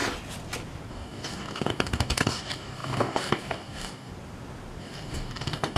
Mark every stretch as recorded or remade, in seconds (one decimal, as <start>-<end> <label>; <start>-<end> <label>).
0.0-0.9 recorded; 0.9-4.1 remade; 4.1-4.8 recorded; 4.8-5.8 remade